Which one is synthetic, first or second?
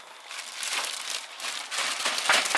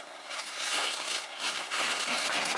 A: second